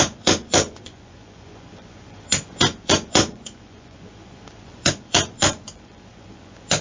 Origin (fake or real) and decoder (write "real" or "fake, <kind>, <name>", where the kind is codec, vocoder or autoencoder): fake, vocoder, Vocos